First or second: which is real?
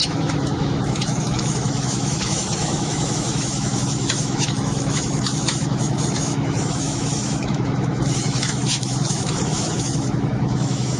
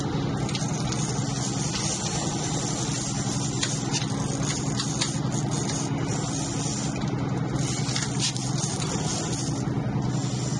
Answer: second